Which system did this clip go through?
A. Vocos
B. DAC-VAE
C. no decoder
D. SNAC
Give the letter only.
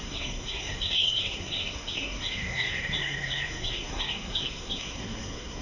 D